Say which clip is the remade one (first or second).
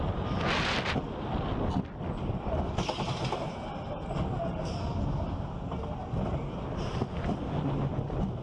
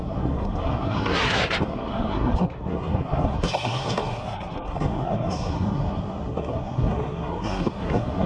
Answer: second